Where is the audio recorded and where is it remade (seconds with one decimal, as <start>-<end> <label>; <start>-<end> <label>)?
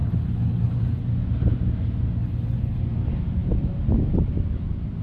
0.0-1.0 remade; 1.0-2.2 recorded; 2.2-2.8 remade; 2.8-5.0 recorded